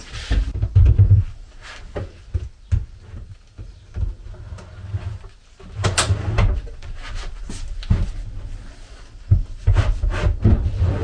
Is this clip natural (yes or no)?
yes